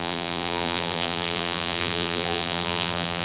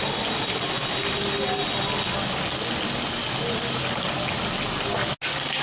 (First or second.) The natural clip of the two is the second